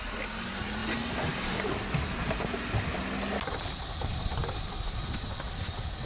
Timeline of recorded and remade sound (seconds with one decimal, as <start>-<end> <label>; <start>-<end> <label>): 0.0-6.1 recorded